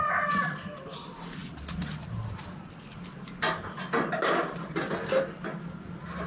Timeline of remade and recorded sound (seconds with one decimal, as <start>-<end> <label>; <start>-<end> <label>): 0.0-6.3 recorded